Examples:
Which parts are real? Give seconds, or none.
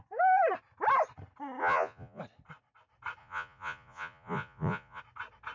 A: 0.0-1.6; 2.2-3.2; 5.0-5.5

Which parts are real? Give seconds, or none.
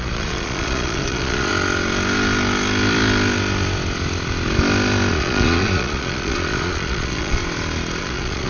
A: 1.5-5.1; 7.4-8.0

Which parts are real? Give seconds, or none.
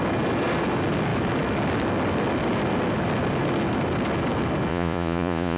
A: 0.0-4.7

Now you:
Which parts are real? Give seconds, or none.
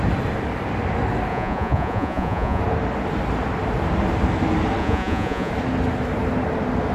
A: 0.0-1.3; 2.6-4.8; 5.5-6.9